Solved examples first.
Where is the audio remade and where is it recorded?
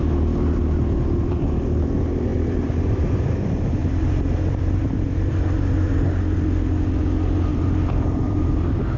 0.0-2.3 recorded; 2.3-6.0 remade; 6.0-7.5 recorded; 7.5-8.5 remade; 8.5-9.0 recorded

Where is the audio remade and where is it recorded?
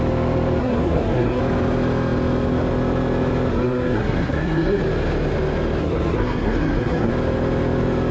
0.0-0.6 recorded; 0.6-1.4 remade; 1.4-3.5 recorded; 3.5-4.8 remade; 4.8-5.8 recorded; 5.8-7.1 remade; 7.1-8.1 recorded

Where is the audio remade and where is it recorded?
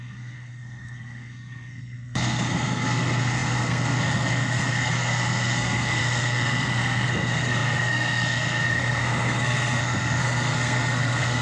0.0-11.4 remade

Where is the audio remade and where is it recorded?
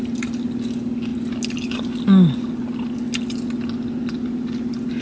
0.0-5.0 recorded